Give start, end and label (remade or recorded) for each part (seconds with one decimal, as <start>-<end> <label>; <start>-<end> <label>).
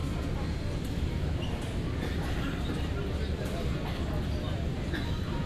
0.0-5.5 recorded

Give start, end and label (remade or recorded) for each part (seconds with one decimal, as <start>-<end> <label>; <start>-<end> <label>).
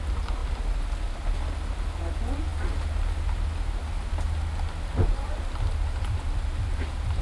0.0-7.2 recorded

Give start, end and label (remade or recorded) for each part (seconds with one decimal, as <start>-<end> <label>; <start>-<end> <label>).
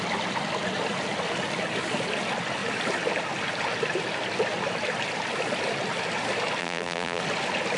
0.0-6.6 recorded; 6.6-7.2 remade; 7.2-7.8 recorded